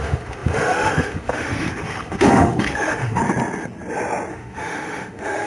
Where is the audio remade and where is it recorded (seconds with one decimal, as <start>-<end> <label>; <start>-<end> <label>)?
0.0-3.2 remade; 3.2-4.3 recorded; 4.3-5.5 remade